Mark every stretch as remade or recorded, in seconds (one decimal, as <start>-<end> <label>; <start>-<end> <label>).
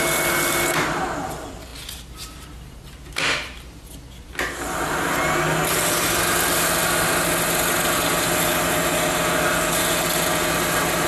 0.0-11.1 recorded